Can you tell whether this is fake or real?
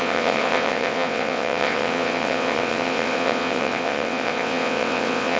fake